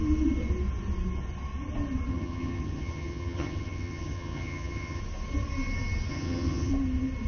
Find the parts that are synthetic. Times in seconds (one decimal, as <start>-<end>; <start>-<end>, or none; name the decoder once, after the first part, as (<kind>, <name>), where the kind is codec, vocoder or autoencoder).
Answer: 2.1-5.0 (vocoder, HiFi-GAN); 6.1-6.7

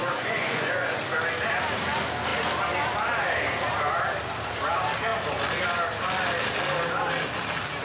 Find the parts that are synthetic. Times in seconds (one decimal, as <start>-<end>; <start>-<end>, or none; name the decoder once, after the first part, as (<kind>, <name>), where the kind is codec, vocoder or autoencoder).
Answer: 0.0-1.0 (vocoder, Vocos)

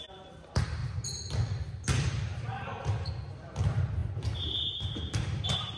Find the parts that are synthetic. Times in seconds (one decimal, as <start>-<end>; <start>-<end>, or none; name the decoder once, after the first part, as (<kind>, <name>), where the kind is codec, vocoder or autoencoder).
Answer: 0.0-0.8 (vocoder, BigVGAN v2); 1.7-5.8

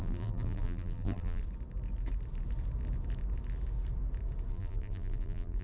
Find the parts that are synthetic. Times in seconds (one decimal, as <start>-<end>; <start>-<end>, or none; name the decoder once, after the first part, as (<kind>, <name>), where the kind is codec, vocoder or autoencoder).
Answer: 0.0-1.4 (vocoder, BigVGAN v2); 4.5-5.6

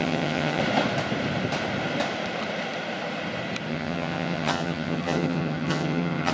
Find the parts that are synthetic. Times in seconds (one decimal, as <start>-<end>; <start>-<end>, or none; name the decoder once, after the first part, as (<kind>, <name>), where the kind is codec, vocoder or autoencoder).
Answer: 0.0-0.6 (vocoder, HiFi-GAN); 3.7-6.3

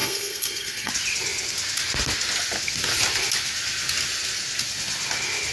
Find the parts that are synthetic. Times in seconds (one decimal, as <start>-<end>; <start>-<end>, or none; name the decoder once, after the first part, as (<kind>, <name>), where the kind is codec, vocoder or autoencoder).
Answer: 0.0-0.9 (codec, SNAC)

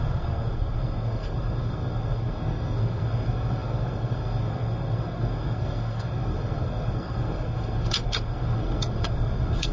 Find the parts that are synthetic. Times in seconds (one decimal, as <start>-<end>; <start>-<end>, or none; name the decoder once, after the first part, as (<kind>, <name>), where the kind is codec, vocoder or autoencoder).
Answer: 0.0-9.7 (codec, SNAC)

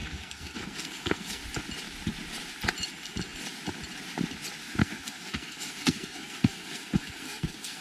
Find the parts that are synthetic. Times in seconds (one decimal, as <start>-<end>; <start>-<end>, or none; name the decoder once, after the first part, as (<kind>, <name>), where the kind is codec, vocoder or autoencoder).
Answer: 0.0-1.4 (codec, SNAC); 4.8-7.8